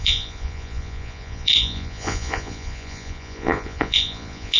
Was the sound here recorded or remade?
remade